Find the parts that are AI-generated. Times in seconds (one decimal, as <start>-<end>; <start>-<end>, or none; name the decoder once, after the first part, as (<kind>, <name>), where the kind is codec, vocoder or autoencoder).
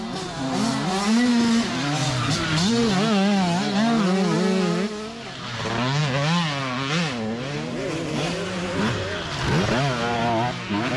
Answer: none